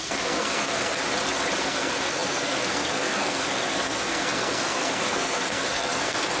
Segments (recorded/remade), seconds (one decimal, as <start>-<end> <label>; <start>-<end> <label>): 0.0-1.0 remade; 1.0-1.6 recorded; 1.6-6.4 remade